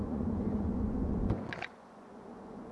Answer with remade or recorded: remade